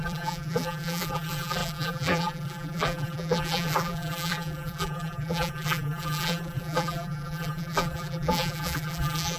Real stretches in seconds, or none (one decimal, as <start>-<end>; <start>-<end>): none